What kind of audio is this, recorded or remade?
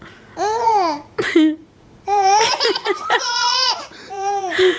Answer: remade